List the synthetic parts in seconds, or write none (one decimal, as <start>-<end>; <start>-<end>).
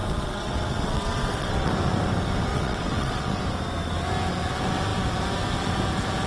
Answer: 0.0-1.7; 2.5-3.4